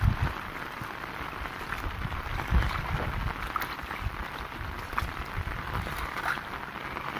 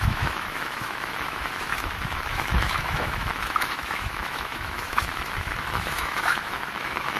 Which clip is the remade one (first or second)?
second